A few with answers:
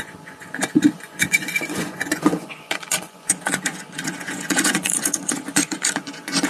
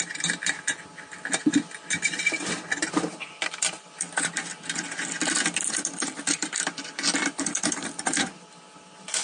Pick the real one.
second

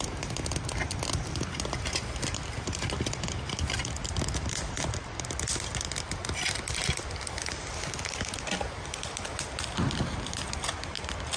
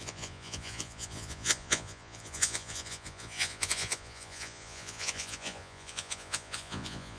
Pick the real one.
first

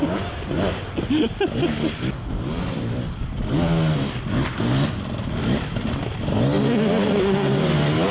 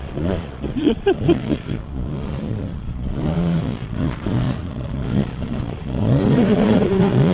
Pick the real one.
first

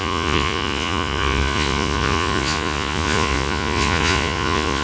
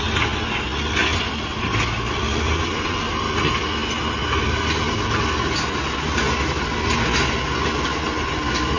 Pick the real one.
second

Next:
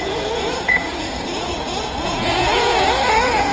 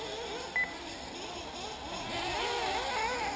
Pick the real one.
second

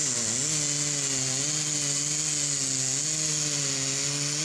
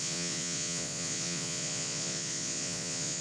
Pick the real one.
first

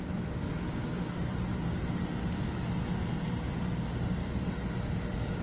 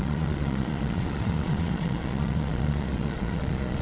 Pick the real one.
first